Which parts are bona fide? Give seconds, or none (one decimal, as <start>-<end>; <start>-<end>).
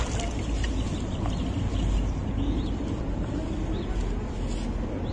0.0-2.2; 3.5-5.1